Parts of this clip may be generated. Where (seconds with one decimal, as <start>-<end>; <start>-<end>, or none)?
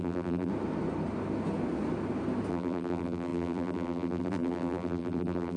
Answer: 0.0-0.5; 2.5-5.6